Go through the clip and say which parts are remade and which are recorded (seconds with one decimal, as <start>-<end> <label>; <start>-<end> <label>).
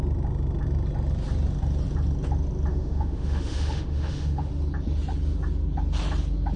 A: 0.0-2.7 recorded; 2.7-4.5 remade; 4.5-6.6 recorded